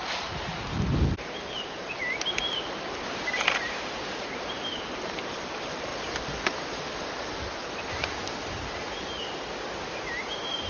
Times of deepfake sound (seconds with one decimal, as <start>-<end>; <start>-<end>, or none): 0.0-0.7; 1.5-5.9; 10.2-10.7